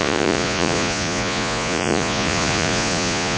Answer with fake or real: fake